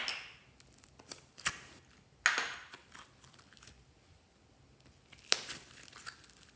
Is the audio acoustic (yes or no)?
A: yes